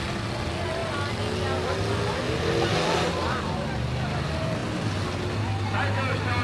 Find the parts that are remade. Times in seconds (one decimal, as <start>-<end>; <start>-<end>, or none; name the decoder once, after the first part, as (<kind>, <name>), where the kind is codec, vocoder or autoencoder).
none